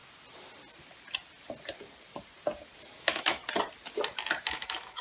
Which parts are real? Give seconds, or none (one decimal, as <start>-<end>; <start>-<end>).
0.0-3.0; 3.4-4.5